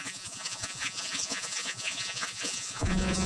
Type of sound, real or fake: fake